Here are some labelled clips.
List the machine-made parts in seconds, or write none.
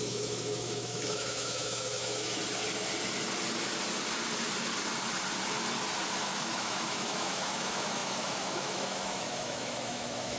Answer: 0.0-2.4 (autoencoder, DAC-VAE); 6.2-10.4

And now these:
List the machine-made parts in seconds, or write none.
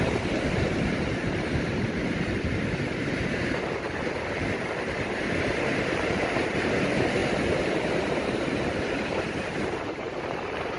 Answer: 0.0-10.8 (vocoder, BigVGAN v2)